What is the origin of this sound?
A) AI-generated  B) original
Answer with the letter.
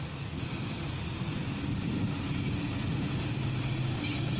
B